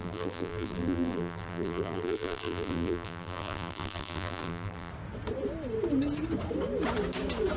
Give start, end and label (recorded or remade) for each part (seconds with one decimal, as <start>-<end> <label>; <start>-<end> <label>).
0.0-4.9 remade; 4.9-7.6 recorded